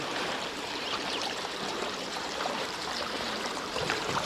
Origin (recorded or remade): remade